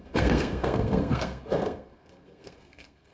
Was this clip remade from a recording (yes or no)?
yes